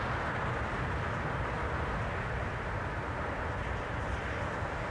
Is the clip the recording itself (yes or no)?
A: yes